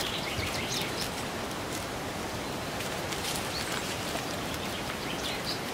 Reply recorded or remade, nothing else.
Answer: remade